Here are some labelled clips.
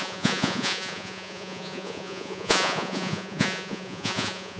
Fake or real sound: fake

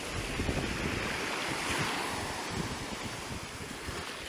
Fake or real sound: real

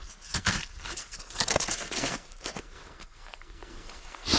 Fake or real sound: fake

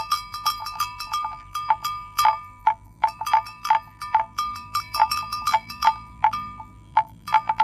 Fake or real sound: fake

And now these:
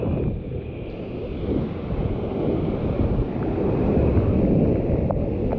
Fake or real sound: real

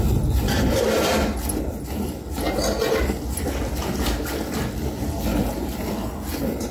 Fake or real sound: real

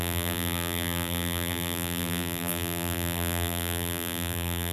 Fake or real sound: fake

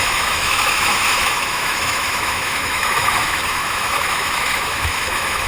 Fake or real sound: fake